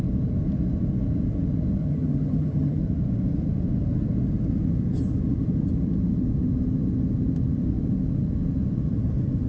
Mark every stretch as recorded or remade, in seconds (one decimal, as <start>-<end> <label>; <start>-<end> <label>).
0.0-1.8 recorded; 1.8-2.8 remade; 2.8-9.5 recorded